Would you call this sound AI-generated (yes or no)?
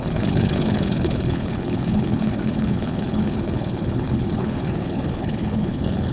yes